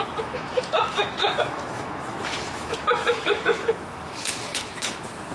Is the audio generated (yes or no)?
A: yes